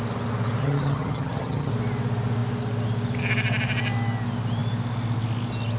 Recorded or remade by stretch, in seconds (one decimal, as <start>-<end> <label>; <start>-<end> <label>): 0.0-0.6 recorded; 0.6-1.7 remade; 1.7-5.8 recorded

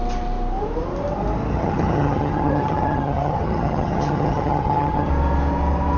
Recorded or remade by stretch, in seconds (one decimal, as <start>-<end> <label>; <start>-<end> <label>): 0.0-1.5 recorded; 1.5-5.1 remade; 5.1-6.0 recorded

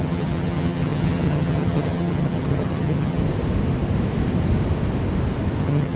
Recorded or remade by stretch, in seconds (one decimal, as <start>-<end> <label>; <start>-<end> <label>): 0.0-3.2 remade; 3.2-5.6 recorded; 5.6-6.0 remade

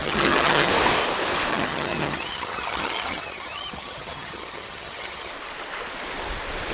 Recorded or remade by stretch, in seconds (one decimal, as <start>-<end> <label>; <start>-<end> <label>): 0.0-0.7 remade; 0.7-1.5 recorded; 1.5-5.3 remade; 5.3-6.7 recorded

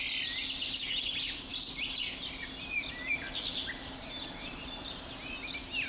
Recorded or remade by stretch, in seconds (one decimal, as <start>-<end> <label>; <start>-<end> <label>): 0.0-5.9 recorded

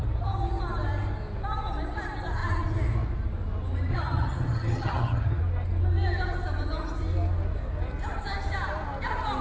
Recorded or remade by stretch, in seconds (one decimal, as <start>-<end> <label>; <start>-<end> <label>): 0.0-3.9 recorded; 3.9-5.4 remade; 5.4-9.4 recorded